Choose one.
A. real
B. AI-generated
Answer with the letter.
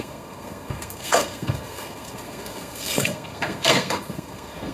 B